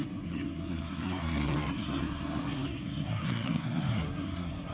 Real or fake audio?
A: fake